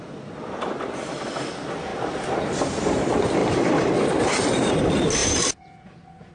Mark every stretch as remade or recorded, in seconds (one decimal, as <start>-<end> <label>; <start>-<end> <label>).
0.0-3.4 recorded; 3.4-4.7 remade; 4.7-6.3 recorded